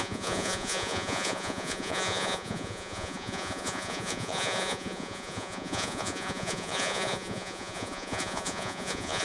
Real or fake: fake